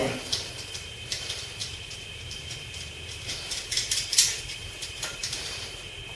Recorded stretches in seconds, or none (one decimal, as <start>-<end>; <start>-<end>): none